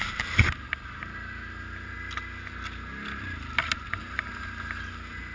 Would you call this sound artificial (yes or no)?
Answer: no